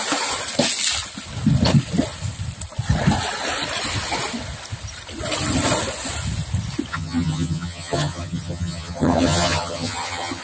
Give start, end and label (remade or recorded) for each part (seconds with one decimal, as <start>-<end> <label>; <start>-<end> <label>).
0.0-6.9 recorded; 6.9-10.4 remade